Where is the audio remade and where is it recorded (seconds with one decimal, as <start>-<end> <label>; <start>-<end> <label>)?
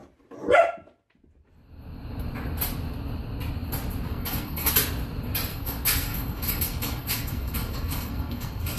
0.0-4.1 recorded; 4.1-4.7 remade; 4.7-5.5 recorded; 5.5-8.8 remade